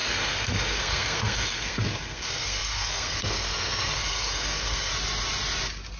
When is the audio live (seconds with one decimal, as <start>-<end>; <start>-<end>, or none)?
4.9-6.0